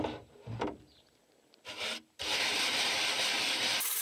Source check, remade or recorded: recorded